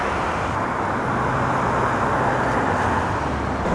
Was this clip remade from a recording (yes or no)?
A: no